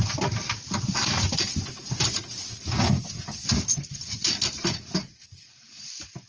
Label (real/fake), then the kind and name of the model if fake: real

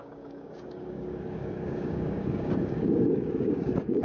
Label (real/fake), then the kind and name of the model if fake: fake, codec, DAC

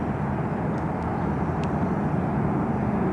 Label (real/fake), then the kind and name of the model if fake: real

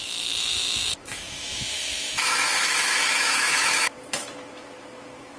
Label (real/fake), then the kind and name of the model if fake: fake, autoencoder, DAC-VAE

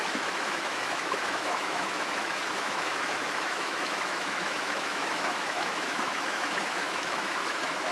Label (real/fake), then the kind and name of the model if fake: fake, autoencoder, DAC-VAE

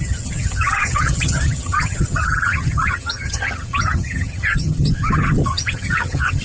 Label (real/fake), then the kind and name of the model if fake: fake, vocoder, HiFi-GAN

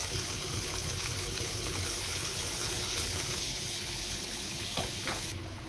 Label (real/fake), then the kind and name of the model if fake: fake, codec, HILCodec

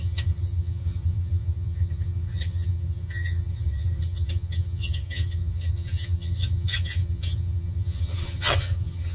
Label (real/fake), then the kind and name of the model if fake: fake, vocoder, HiFi-GAN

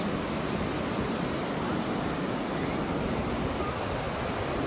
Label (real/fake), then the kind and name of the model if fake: real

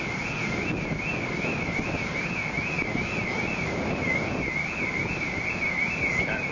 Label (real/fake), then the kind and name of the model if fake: real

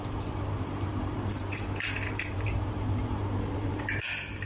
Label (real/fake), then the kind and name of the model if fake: fake, vocoder, BigVGAN v2